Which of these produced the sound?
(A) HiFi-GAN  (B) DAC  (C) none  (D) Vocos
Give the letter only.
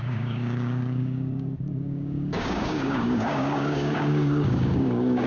B